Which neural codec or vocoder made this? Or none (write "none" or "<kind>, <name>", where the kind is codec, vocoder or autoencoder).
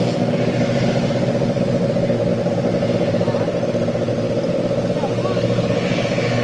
none